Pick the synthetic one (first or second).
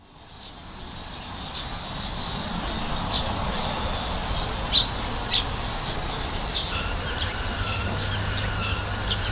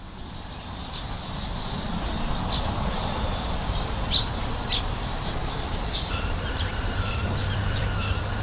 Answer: second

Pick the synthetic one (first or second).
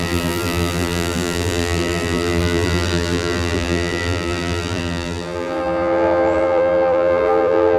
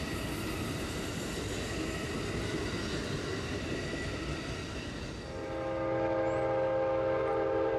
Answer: first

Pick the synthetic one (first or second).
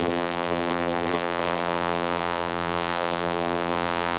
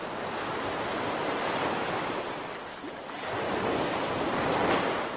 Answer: first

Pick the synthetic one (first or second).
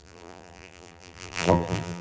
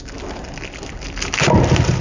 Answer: first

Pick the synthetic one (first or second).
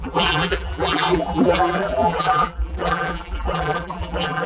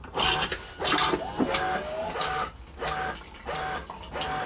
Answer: first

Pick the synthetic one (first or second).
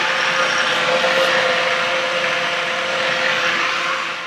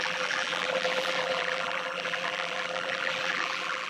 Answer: second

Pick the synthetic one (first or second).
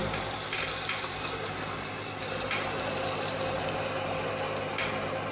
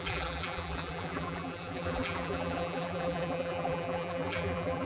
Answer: second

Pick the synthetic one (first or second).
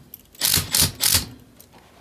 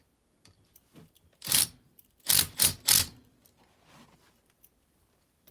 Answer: second